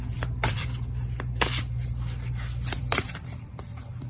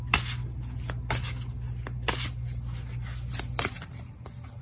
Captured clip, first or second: second